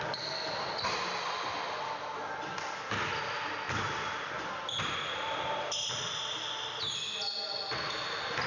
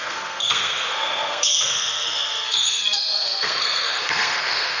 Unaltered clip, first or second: first